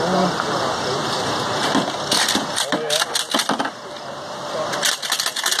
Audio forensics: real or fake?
real